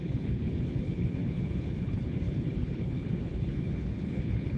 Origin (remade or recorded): remade